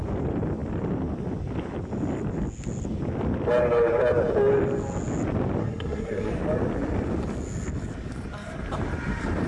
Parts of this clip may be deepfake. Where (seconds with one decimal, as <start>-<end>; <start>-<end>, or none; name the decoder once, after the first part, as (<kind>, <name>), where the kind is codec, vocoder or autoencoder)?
5.6-6.3 (codec, SNAC)